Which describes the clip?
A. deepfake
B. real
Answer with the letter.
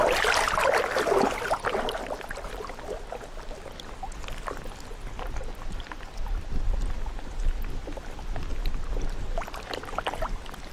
B